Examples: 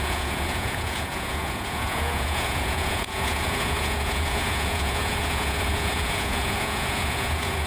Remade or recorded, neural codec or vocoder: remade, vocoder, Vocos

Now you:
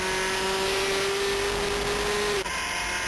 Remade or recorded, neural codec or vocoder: recorded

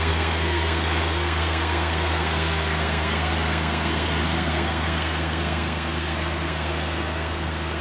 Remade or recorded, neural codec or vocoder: remade, codec, SNAC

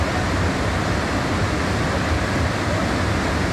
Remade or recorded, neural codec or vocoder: recorded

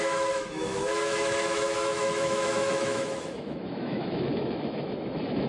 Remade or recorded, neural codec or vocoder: remade, autoencoder, DAC-VAE